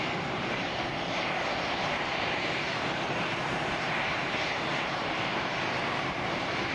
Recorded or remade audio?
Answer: remade